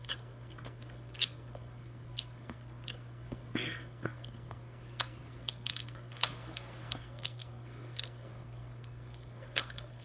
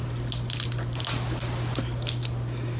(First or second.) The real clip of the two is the second